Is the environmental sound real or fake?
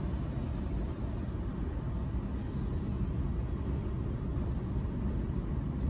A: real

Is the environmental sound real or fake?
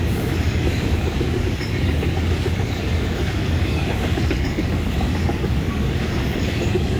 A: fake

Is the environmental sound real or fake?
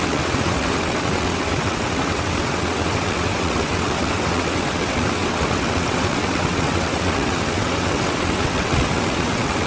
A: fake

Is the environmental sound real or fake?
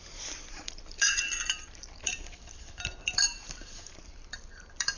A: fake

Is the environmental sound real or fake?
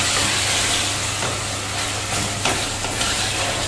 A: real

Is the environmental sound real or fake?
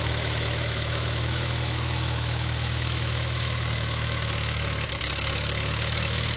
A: fake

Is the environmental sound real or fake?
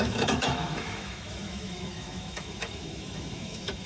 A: fake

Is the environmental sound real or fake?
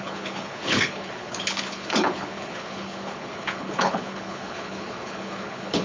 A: fake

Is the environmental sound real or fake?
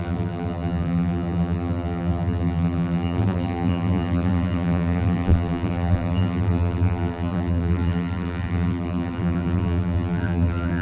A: fake